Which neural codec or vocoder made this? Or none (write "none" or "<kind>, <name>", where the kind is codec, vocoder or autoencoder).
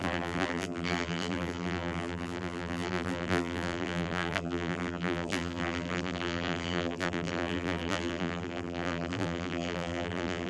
vocoder, BigVGAN v2